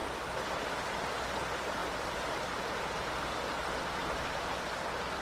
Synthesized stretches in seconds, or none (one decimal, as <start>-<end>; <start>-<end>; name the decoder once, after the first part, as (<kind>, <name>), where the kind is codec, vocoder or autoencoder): none